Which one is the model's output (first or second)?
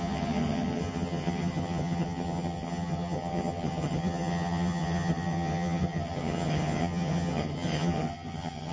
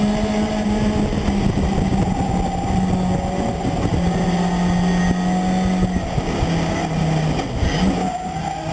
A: first